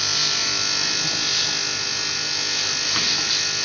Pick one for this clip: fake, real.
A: real